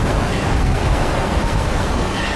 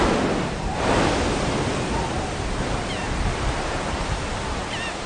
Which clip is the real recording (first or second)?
second